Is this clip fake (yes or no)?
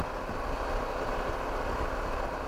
no